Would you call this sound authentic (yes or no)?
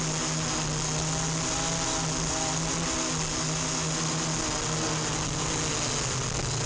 yes